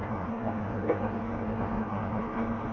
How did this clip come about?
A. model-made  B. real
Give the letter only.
A